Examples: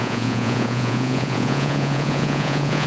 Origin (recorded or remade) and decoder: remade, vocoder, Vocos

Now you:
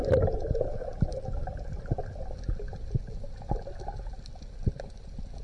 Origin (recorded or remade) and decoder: recorded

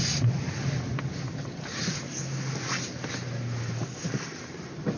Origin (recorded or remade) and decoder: recorded